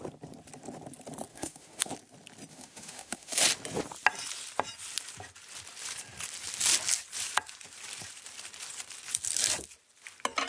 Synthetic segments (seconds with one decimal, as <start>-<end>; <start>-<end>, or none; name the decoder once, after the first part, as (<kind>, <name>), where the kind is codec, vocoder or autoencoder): 1.3-1.9 (autoencoder, DAC-VAE); 2.5-3.4